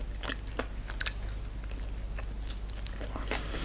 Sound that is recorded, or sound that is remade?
recorded